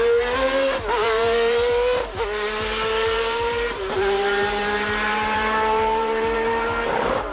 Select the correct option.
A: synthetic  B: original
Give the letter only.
A